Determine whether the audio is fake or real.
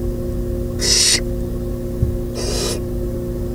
real